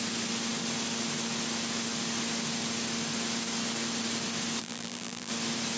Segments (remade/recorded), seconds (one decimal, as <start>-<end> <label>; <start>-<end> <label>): 0.0-4.6 recorded; 4.6-5.3 remade; 5.3-5.8 recorded